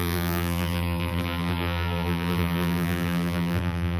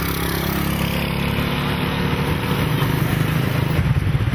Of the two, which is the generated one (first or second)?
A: first